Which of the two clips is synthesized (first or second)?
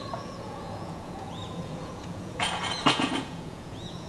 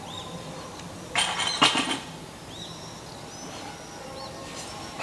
first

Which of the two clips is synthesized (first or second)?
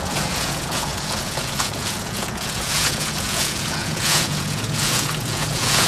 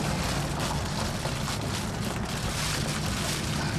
first